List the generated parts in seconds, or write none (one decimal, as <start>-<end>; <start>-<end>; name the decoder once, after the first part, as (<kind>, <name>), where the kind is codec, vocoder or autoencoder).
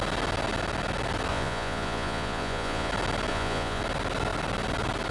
1.3-2.9 (vocoder, Vocos); 3.3-3.8